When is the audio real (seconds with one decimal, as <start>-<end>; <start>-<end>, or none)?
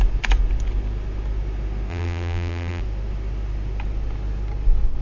0.0-1.9; 2.8-5.0